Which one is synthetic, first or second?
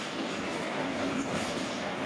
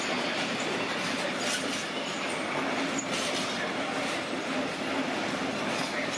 first